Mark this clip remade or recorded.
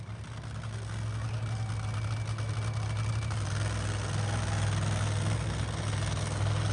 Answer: recorded